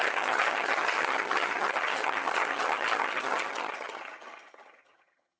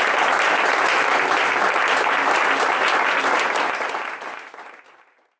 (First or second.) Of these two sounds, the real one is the second